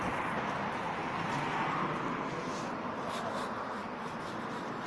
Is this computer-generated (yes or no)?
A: no